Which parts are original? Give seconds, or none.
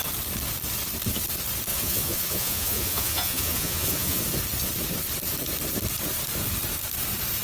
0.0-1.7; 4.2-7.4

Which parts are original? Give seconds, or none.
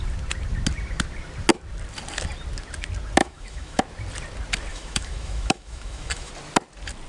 0.0-3.2; 3.8-4.7; 6.3-7.1